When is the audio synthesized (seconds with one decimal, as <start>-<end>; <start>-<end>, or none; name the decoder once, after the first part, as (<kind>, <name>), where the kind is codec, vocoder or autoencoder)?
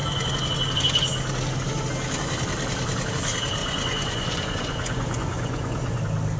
3.6-6.0 (vocoder, Vocos)